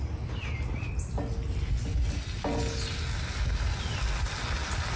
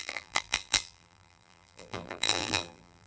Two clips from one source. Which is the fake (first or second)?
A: second